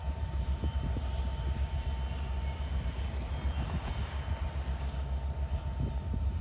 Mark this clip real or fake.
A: real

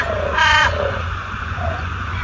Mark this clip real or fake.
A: fake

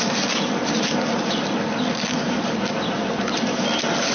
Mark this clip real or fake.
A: real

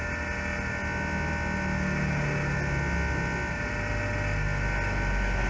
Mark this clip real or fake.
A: real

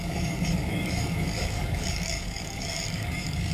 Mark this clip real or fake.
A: fake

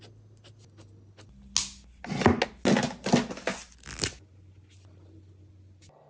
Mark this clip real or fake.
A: real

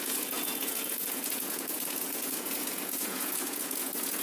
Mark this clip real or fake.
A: fake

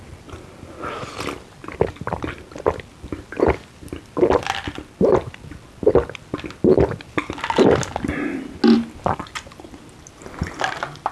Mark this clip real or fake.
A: real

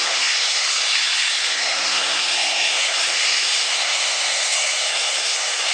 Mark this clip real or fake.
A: fake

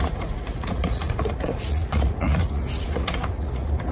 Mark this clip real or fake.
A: fake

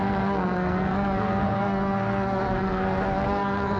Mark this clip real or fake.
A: fake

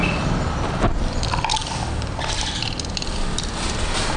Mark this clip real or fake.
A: real